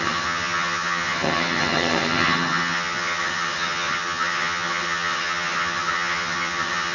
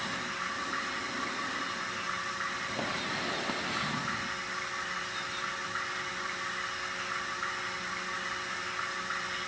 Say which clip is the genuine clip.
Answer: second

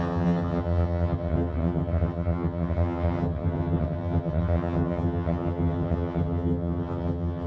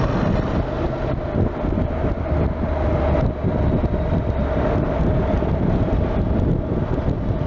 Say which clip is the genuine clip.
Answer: second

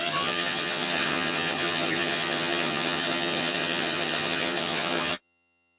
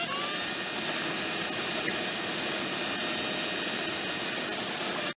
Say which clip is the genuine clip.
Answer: second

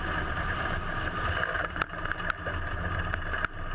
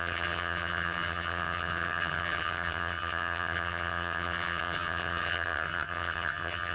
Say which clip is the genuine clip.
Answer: first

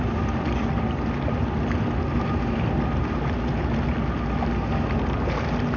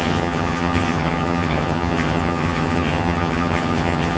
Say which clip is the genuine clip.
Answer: first